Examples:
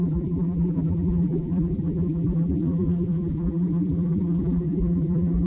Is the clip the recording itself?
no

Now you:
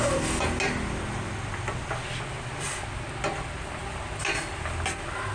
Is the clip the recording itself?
yes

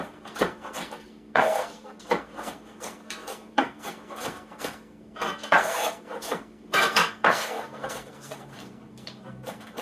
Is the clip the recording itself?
no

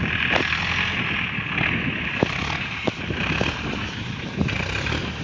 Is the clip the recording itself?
yes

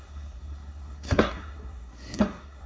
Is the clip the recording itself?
no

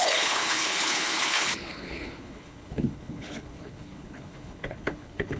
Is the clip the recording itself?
no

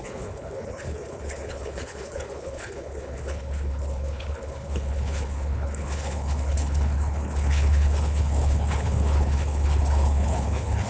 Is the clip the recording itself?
no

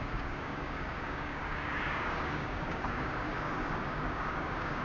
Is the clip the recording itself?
no